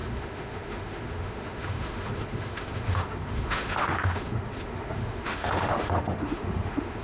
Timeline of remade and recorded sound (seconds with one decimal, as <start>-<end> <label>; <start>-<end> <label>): 0.0-7.0 remade